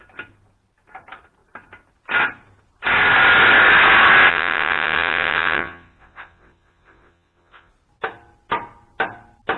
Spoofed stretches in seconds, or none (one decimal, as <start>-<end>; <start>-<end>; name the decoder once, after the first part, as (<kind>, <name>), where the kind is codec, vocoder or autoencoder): 4.3-7.7 (vocoder, WaveNeXt)